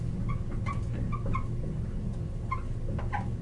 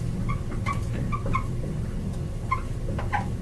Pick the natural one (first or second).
first